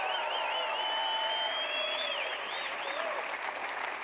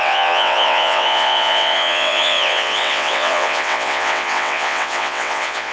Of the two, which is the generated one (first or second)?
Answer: second